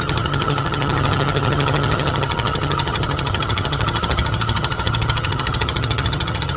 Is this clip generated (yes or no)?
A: yes